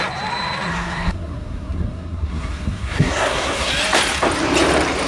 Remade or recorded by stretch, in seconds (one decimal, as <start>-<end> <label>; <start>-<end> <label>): 0.0-0.7 recorded; 0.7-3.7 remade; 3.7-5.1 recorded